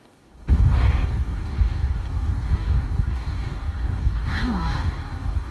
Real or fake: fake